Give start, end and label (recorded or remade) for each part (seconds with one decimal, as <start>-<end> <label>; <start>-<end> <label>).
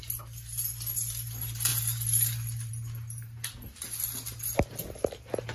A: 0.0-5.5 recorded